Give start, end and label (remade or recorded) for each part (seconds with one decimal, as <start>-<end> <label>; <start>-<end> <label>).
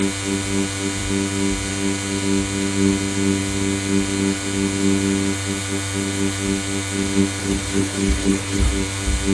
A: 0.0-7.4 recorded; 7.4-8.7 remade; 8.7-9.3 recorded